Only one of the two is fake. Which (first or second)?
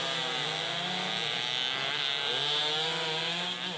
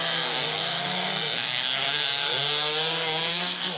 second